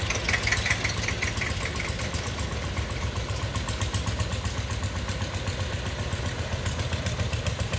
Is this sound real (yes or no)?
yes